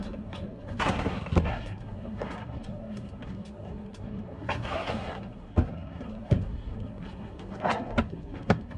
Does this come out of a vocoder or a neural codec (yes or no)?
yes